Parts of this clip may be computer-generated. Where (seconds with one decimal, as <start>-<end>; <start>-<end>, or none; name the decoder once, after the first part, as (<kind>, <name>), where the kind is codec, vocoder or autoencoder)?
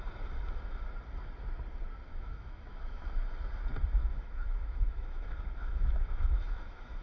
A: 2.1-3.1 (autoencoder, DAC-VAE); 4.0-7.0